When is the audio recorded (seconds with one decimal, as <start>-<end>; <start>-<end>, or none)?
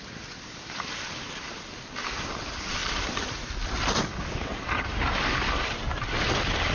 0.0-4.5; 5.2-6.7